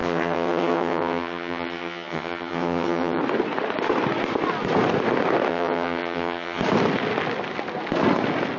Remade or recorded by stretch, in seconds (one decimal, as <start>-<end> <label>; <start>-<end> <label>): 0.0-3.2 remade; 3.2-5.5 recorded; 5.5-6.6 remade; 6.6-8.6 recorded